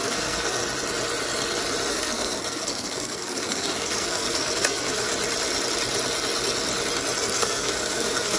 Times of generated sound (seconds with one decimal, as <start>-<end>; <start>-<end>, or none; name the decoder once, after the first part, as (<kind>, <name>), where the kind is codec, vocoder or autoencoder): 0.0-0.6 (codec, SNAC); 1.9-5.1; 7.2-8.4